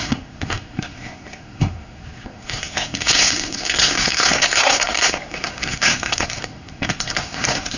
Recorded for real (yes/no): no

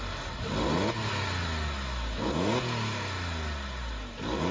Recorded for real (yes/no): yes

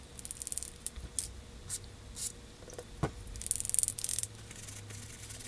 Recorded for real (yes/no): yes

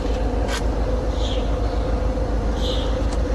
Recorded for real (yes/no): yes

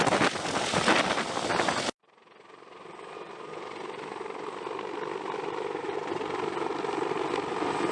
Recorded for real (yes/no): yes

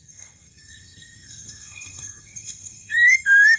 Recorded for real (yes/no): no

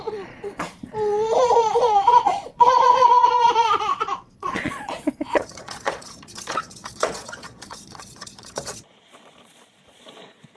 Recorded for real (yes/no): no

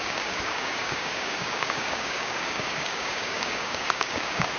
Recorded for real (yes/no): no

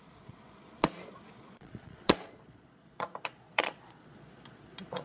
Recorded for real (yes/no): no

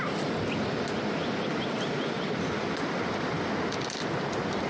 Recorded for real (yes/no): yes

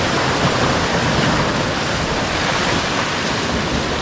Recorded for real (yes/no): yes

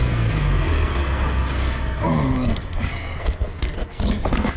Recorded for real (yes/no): no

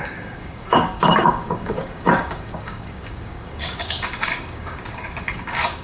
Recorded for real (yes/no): no